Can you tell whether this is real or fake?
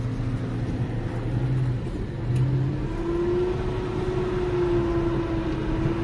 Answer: real